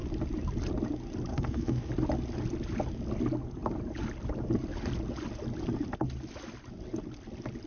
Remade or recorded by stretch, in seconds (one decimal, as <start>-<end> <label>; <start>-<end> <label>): 0.0-1.3 recorded; 1.3-1.9 remade; 1.9-7.7 recorded